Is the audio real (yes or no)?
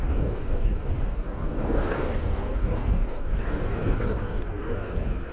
no